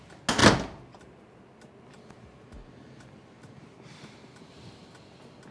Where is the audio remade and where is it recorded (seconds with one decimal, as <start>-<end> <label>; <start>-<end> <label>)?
0.0-5.5 recorded